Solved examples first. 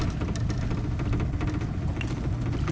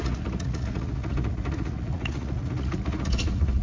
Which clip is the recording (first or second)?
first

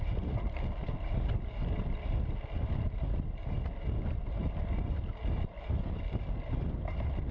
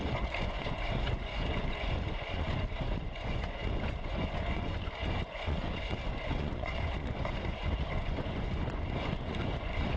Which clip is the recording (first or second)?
first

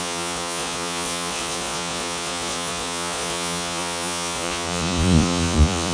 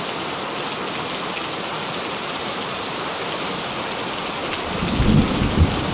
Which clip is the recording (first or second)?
second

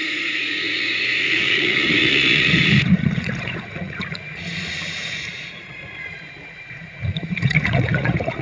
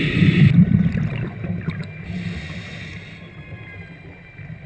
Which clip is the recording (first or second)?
second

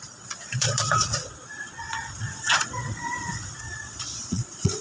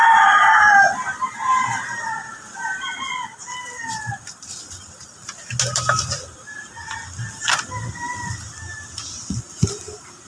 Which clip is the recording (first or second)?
second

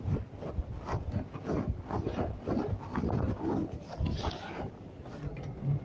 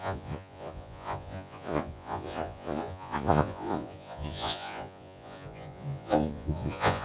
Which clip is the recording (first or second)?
first